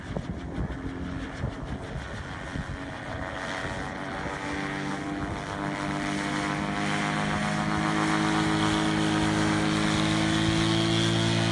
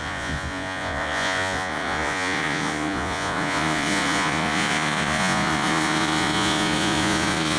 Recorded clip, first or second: first